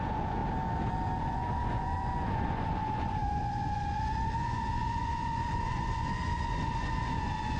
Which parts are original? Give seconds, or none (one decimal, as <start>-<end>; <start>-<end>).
0.4-1.2